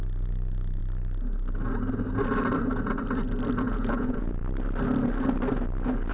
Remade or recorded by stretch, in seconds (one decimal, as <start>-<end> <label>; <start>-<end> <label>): 0.0-0.8 remade; 0.8-3.6 recorded; 3.6-4.4 remade; 4.4-6.1 recorded